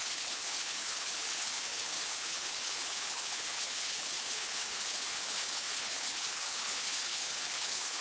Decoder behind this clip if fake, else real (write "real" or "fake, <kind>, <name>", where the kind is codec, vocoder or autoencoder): fake, codec, HILCodec